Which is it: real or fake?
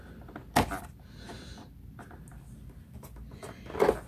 real